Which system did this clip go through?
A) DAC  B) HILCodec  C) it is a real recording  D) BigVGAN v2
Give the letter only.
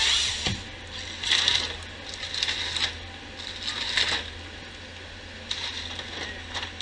C